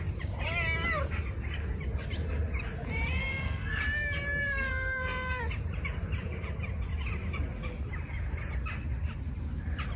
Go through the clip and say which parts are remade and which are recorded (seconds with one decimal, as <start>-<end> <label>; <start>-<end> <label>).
0.0-3.2 recorded; 3.2-3.8 remade; 3.8-4.4 recorded; 4.4-5.4 remade; 5.4-10.0 recorded

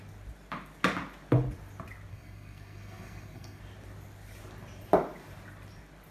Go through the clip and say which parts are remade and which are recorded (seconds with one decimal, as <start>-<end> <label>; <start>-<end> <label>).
0.0-2.1 recorded; 2.1-3.6 remade; 3.6-6.1 recorded